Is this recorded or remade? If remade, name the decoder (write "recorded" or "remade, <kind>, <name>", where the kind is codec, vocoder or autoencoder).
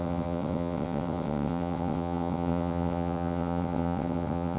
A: remade, vocoder, WaveNeXt